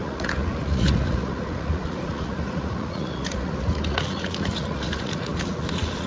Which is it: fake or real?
fake